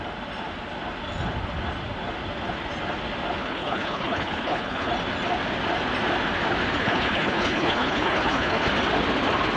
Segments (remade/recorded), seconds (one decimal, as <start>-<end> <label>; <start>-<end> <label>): 0.0-3.4 recorded; 3.4-4.9 remade; 4.9-6.8 recorded; 6.8-8.7 remade; 8.7-9.6 recorded